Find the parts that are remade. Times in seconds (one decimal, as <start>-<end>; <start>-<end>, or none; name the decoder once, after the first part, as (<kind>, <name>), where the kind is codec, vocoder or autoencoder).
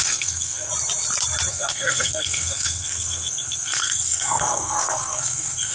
0.0-0.7 (codec, SNAC); 1.5-5.7